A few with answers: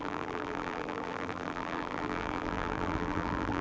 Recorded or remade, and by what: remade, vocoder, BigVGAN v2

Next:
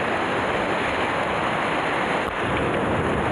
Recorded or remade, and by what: recorded